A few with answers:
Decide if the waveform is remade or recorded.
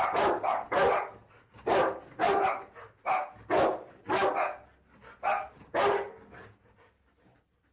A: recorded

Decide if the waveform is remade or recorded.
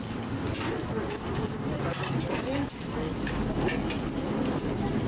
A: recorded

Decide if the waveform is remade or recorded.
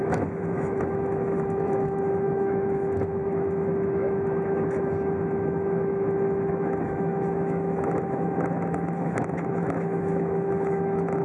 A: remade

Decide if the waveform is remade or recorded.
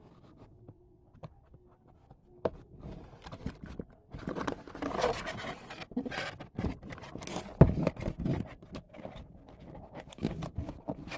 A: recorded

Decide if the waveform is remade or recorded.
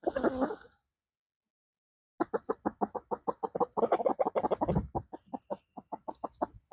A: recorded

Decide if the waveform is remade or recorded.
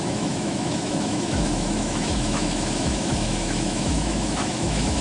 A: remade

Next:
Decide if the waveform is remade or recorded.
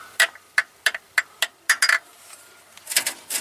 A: recorded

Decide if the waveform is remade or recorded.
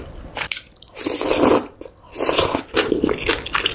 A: remade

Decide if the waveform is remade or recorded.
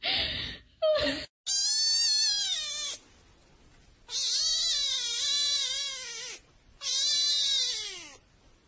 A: recorded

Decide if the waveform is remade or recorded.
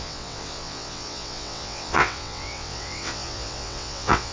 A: remade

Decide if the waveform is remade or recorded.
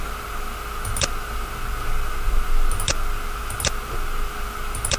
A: recorded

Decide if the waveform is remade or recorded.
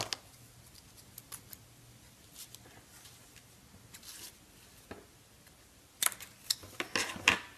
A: recorded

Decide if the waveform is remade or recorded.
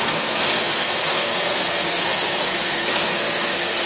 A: remade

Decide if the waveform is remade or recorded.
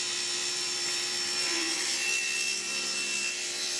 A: remade